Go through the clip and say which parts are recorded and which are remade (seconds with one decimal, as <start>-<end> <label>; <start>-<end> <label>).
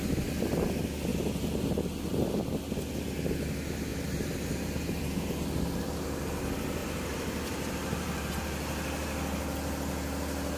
0.0-3.9 recorded; 3.9-5.3 remade; 5.3-6.8 recorded; 6.8-8.3 remade; 8.3-10.6 recorded